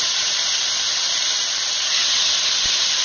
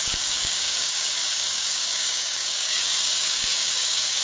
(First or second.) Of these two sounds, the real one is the first